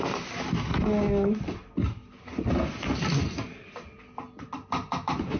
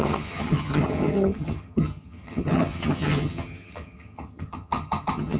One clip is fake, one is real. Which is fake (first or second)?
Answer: second